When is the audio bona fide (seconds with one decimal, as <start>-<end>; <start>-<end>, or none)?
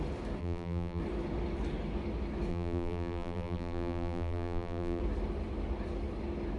0.0-0.4; 1.0-2.5; 5.0-6.6